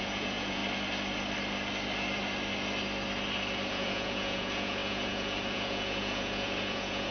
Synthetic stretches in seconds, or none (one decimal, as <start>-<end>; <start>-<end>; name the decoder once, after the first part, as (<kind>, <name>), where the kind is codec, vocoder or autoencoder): 0.0-0.6 (vocoder, Vocos); 3.7-7.1